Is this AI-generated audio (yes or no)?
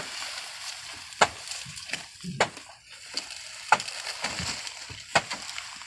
no